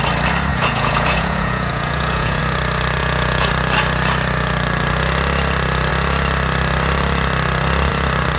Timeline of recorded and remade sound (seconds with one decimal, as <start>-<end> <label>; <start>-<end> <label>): 0.0-0.5 recorded; 0.5-2.4 remade; 2.4-3.0 recorded; 3.0-3.5 remade; 3.5-8.4 recorded